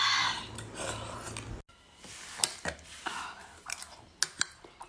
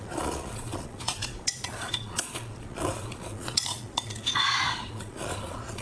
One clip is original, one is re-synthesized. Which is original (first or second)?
first